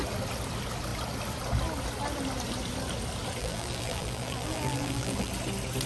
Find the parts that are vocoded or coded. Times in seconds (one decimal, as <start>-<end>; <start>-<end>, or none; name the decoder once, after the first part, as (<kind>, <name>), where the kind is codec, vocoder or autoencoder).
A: 3.4-5.3 (vocoder, BigVGAN v2)